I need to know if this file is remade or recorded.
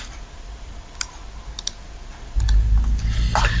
recorded